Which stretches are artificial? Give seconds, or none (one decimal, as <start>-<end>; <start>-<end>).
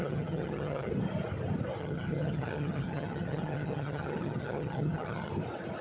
0.0-0.9; 1.8-5.3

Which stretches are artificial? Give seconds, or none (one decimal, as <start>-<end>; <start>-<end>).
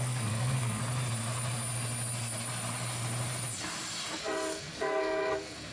0.0-0.8; 4.2-5.7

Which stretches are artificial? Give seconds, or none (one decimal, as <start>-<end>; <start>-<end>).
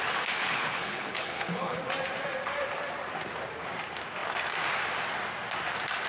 0.4-1.8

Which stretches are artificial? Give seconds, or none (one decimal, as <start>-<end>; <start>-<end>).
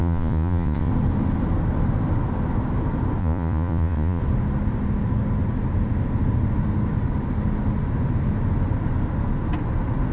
0.0-0.9; 3.2-4.2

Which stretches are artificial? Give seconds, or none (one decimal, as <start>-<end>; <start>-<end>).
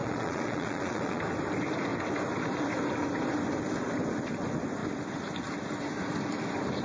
0.0-1.2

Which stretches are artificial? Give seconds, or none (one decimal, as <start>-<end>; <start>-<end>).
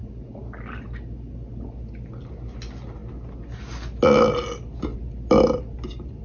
none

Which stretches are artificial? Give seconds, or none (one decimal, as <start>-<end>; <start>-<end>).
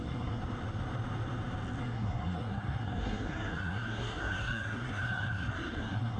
0.0-0.4; 1.8-6.2